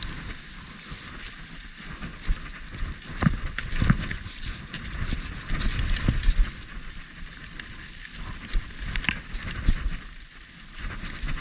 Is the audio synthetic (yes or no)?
no